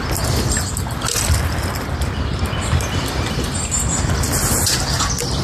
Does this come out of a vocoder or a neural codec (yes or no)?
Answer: no